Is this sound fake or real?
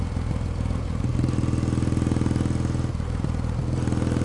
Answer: real